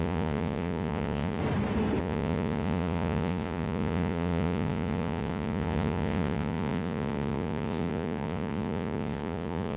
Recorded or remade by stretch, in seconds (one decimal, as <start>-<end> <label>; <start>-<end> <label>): 0.0-1.4 remade; 1.4-2.0 recorded; 2.0-9.8 remade